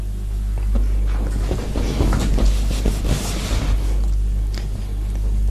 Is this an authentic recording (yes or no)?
yes